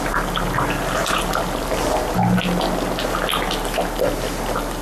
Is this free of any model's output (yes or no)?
yes